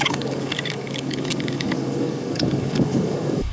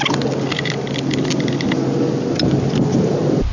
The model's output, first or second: first